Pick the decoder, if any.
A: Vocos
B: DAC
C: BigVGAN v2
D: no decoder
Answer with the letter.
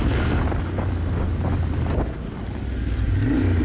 D